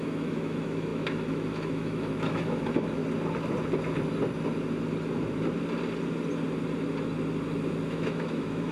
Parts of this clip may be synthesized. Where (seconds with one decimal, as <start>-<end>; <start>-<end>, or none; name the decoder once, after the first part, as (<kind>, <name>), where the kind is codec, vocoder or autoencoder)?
0.0-3.0 (autoencoder, DAC-VAE); 7.9-8.7